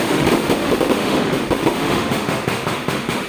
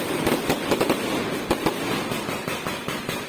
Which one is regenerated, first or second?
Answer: first